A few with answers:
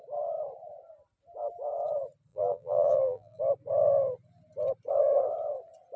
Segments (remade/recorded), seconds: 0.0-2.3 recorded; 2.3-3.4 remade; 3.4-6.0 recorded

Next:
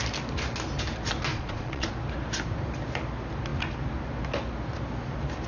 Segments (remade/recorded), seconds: 0.0-1.3 recorded; 1.3-1.9 remade; 1.9-5.5 recorded

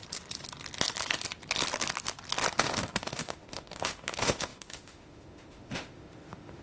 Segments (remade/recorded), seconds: 0.0-2.6 recorded; 2.6-6.6 remade

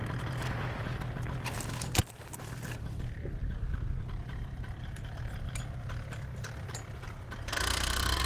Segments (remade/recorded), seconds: 0.0-8.3 recorded

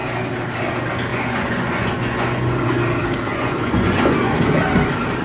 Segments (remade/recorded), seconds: 0.0-1.1 recorded; 1.1-2.8 remade; 2.8-3.3 recorded; 3.3-4.5 remade; 4.5-5.2 recorded

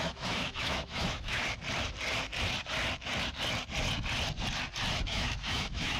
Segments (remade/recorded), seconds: 0.0-1.4 remade; 1.4-5.0 recorded; 5.0-6.0 remade

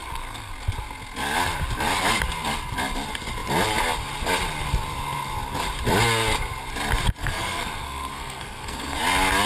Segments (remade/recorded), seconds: 0.0-0.5 remade; 0.5-7.2 recorded; 7.2-9.0 remade; 9.0-9.5 recorded